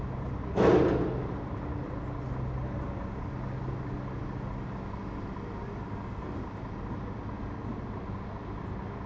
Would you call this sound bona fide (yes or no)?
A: yes